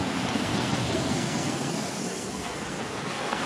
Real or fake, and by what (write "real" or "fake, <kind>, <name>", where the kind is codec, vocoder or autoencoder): fake, codec, SNAC